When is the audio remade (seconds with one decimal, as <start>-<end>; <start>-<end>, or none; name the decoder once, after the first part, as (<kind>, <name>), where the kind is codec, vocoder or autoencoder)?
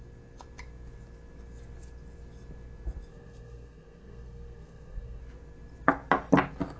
3.1-5.2 (codec, SNAC)